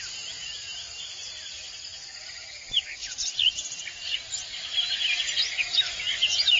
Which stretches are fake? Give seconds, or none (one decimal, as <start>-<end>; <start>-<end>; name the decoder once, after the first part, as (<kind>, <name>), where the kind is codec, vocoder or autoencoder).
none